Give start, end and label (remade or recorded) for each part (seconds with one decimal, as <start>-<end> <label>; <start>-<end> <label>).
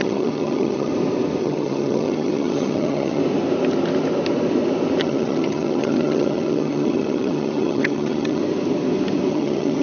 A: 0.0-0.9 remade; 0.9-1.4 recorded; 1.4-3.2 remade; 3.2-5.0 recorded; 5.0-8.4 remade; 8.4-9.3 recorded; 9.3-9.8 remade